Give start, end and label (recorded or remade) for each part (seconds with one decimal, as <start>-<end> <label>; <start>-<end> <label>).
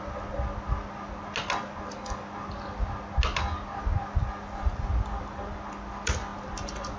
0.0-7.0 recorded